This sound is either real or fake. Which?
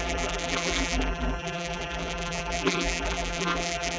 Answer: fake